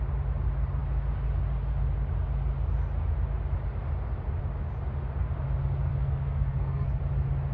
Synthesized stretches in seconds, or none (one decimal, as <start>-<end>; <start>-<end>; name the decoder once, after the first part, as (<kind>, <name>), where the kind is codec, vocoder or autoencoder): 5.9-7.0 (codec, SNAC)